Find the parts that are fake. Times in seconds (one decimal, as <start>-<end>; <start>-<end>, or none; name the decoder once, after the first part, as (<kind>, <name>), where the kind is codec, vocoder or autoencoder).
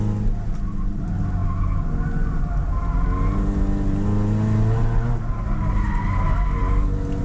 none